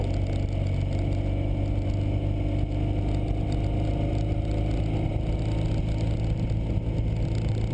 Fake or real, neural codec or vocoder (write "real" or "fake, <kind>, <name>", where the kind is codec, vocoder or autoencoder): real